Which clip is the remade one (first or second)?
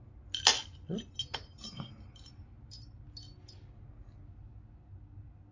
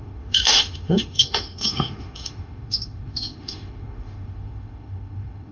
second